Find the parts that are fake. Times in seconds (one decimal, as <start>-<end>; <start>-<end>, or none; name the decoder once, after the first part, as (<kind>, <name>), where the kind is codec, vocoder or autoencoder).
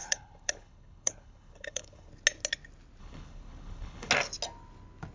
0.0-2.1 (codec, HILCodec); 3.0-4.1